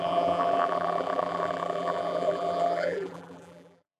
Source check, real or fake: fake